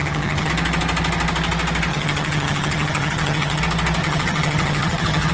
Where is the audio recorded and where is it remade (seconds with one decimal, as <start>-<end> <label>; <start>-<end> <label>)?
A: 0.0-0.5 remade; 0.5-1.9 recorded; 1.9-3.6 remade; 3.6-4.0 recorded; 4.0-5.3 remade